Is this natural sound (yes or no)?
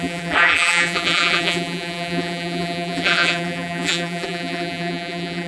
no